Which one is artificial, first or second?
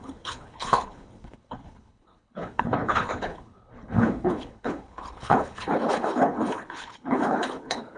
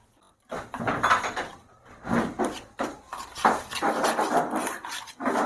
first